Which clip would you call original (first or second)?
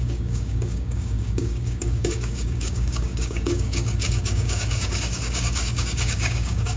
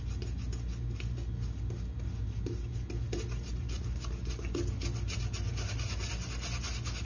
second